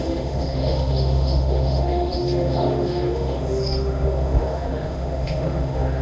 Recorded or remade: remade